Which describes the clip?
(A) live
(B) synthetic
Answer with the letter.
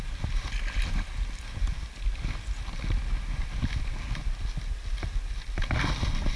A